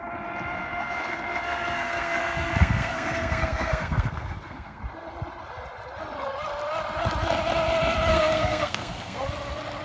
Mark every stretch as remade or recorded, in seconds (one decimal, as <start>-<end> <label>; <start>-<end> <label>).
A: 0.0-0.6 recorded; 0.6-4.8 remade; 4.8-8.1 recorded; 8.1-9.2 remade; 9.2-9.8 recorded